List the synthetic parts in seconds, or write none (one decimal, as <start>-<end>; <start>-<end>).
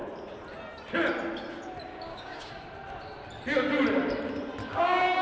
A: 1.9-2.5; 4.6-5.2